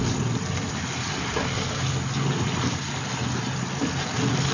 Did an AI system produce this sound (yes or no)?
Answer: no